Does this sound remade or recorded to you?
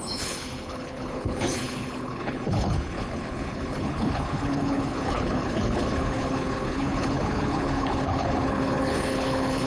remade